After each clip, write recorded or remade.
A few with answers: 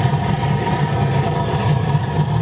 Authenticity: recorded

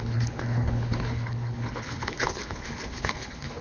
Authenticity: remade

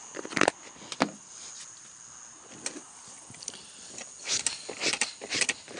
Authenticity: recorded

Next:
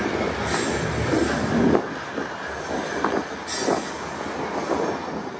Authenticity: recorded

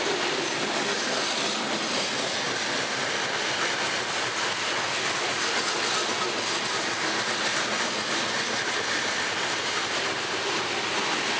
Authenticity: recorded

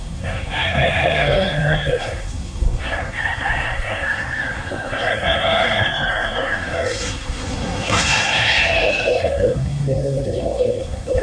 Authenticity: remade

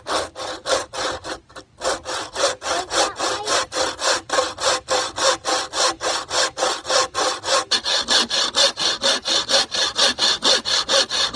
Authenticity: recorded